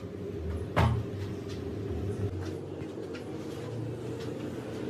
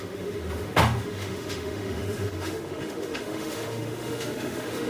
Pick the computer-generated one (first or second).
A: second